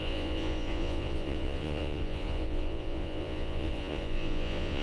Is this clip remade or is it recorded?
remade